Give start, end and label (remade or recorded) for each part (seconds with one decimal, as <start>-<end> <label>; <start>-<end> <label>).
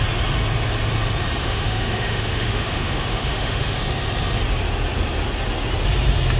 0.0-1.4 recorded; 1.4-3.8 remade; 3.8-6.4 recorded